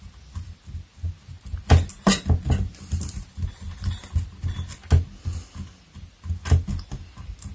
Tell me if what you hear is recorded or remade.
recorded